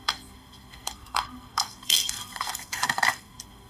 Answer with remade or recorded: remade